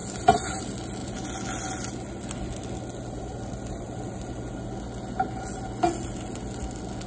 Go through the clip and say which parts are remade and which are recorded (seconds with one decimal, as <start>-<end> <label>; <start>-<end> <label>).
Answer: 0.0-0.6 remade; 0.6-7.1 recorded